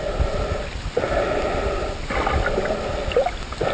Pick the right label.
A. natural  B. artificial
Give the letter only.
A